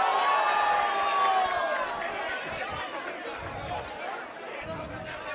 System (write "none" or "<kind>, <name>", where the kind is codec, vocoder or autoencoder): none